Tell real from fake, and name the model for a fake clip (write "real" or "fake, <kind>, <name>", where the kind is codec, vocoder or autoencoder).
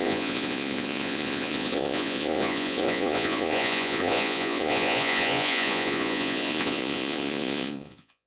fake, vocoder, Vocos